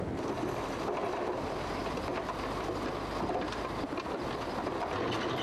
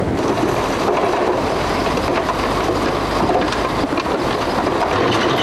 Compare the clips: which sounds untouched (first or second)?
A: first